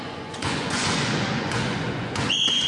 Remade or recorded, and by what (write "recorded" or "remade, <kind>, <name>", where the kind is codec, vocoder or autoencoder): remade, vocoder, Vocos